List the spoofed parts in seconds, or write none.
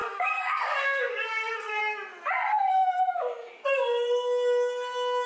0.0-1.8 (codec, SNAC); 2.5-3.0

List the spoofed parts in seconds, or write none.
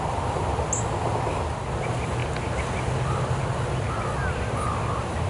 none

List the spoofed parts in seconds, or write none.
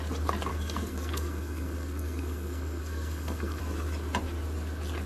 0.5-3.6 (codec, SNAC)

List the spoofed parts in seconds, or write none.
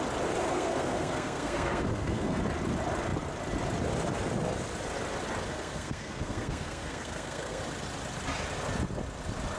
0.5-2.4 (codec, SNAC); 5.5-7.6